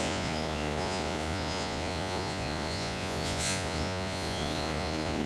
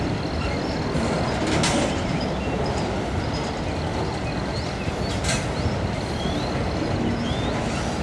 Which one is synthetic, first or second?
first